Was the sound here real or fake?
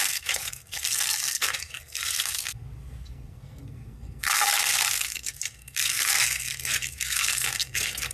fake